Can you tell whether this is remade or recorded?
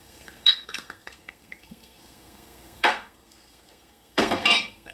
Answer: remade